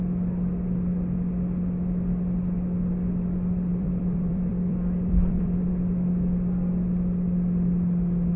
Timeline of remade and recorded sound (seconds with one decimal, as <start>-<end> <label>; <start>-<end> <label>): 0.0-3.7 recorded; 3.7-5.7 remade; 5.7-8.4 recorded